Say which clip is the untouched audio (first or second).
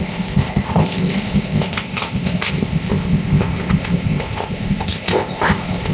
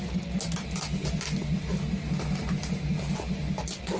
second